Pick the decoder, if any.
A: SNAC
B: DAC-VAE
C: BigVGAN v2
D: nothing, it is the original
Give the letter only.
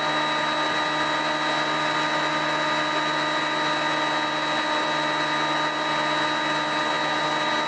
D